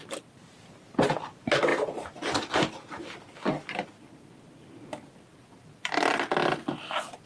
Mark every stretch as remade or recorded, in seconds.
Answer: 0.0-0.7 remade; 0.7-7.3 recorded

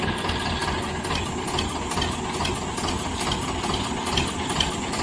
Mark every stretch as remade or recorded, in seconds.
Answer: 0.0-0.6 remade; 0.6-3.6 recorded; 3.6-5.0 remade

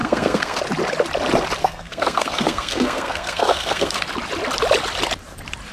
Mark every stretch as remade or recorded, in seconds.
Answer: 0.0-0.6 remade; 0.6-1.6 recorded; 1.6-4.0 remade; 4.0-5.7 recorded

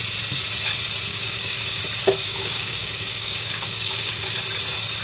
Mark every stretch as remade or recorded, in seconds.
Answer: 0.0-1.1 recorded; 1.1-1.8 remade; 1.8-2.3 recorded; 2.3-4.3 remade; 4.3-5.0 recorded

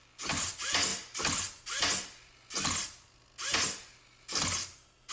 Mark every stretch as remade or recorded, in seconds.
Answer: 0.0-4.6 recorded; 4.6-5.1 remade

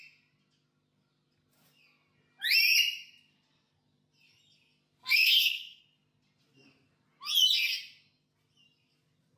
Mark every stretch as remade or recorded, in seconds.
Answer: 0.0-5.0 recorded; 5.0-5.8 remade; 5.8-9.4 recorded

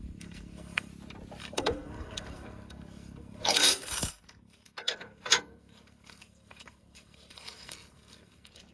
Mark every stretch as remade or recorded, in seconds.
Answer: 0.0-0.9 remade; 0.9-1.4 recorded; 1.4-8.7 remade

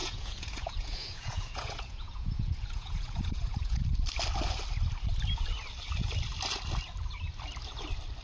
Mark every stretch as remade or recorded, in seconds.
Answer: 0.0-3.8 remade; 3.8-8.2 recorded